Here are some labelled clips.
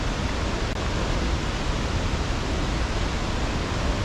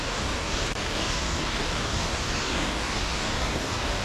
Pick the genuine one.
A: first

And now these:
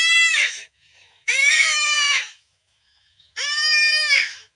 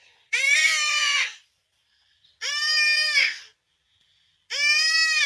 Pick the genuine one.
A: second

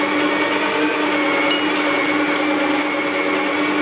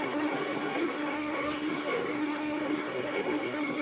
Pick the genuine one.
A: first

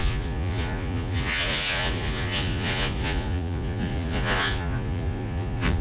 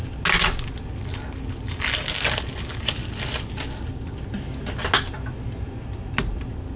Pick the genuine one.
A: second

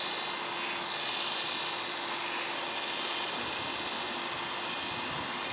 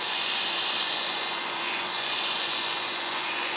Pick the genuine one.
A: first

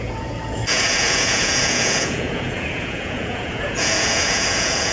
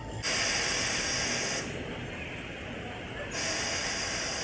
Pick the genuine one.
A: second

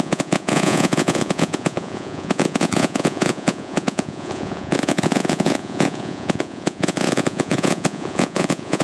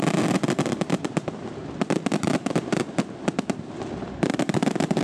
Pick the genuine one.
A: second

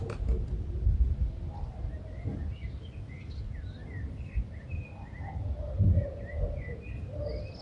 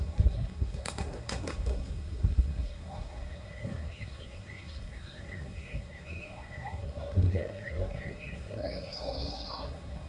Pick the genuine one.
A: first